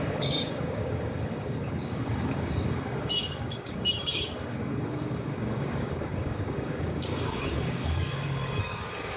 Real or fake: fake